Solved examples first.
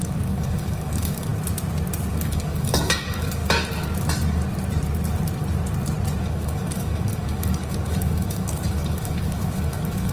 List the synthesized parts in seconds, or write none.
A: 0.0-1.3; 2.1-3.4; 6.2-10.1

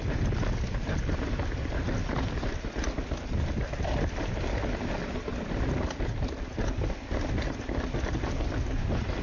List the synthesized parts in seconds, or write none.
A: none

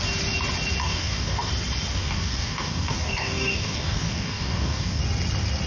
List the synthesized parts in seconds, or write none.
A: 0.8-1.5; 1.9-5.0